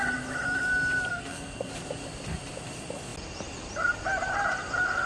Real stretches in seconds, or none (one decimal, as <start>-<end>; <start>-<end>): 0.0-1.1; 1.7-5.1